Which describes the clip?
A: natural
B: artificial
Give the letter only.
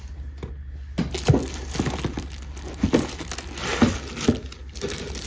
A